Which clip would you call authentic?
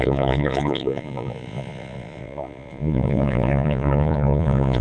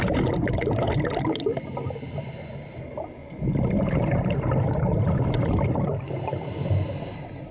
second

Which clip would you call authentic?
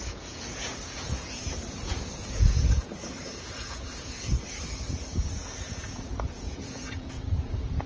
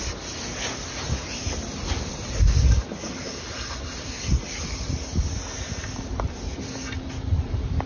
second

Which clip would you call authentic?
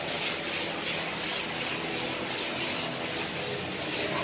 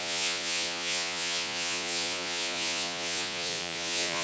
first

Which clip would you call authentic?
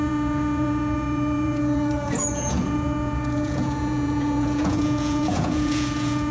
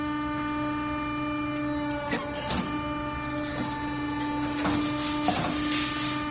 second